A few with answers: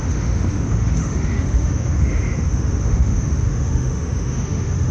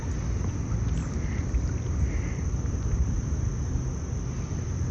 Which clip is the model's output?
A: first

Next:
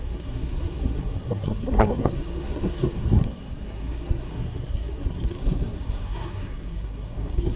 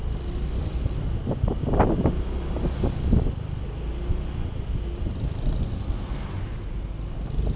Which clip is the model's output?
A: first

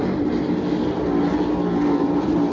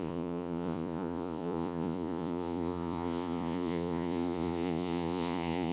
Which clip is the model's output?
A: second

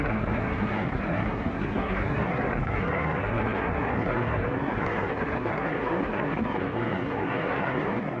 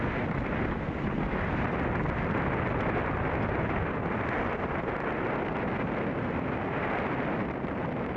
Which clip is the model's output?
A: first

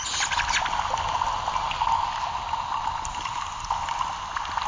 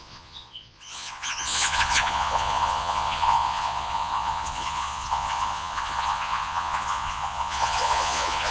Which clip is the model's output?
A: second